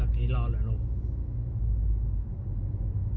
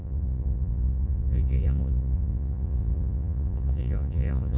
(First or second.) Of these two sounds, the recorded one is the first